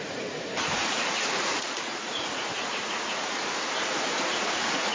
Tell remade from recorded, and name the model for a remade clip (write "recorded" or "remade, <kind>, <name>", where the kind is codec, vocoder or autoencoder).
remade, vocoder, Vocos